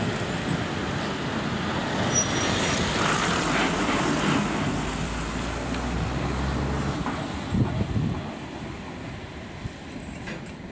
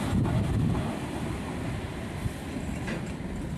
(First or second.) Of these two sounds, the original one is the first